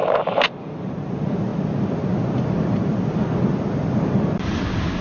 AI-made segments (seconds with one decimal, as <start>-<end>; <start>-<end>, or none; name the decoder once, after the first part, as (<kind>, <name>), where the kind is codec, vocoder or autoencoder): 0.0-1.1 (vocoder, BigVGAN v2)